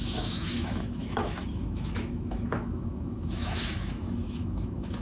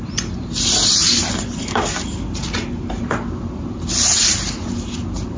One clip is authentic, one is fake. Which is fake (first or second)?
first